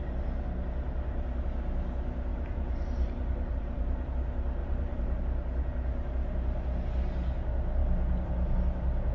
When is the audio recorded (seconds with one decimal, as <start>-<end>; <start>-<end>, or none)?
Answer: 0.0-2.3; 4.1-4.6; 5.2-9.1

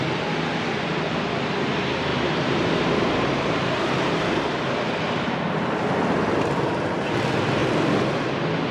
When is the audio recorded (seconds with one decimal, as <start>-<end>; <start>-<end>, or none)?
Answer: 0.0-2.1; 4.5-6.3; 7.1-8.7

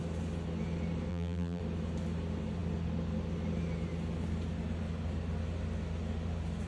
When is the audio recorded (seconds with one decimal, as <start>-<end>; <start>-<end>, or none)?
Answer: 0.0-1.1; 1.6-6.7

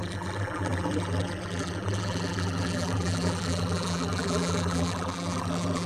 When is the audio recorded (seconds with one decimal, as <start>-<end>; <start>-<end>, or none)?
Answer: none

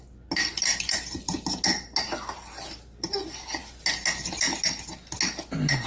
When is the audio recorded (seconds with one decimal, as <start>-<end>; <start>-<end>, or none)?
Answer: 0.0-5.9

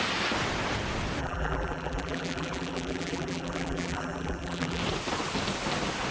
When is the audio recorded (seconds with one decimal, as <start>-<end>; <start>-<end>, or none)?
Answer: 0.0-1.2; 4.8-6.1

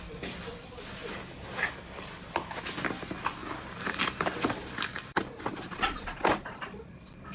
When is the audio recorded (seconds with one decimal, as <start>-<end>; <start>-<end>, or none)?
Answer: 1.0-2.8